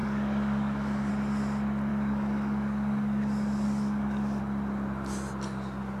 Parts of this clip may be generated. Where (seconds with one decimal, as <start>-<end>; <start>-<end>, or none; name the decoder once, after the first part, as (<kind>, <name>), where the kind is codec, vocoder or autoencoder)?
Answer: 0.0-1.1 (codec, DAC); 1.9-4.4